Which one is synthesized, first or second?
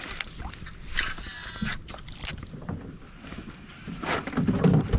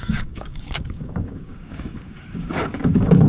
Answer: second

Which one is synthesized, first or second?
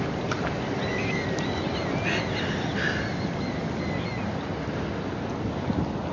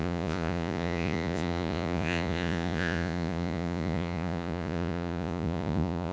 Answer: second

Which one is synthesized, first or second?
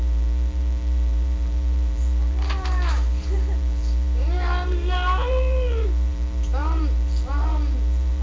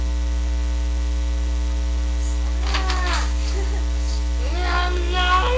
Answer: first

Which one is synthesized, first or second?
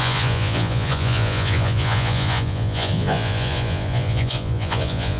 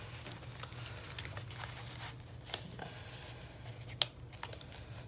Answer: first